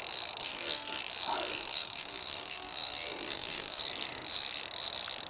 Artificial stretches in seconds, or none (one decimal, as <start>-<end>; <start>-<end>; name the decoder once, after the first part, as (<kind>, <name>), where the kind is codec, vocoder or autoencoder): 0.4-1.0 (codec, SNAC); 1.5-3.8